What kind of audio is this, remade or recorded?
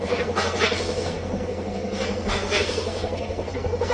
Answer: remade